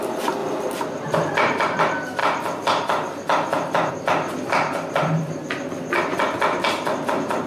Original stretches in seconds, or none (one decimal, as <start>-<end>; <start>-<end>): 0.0-7.5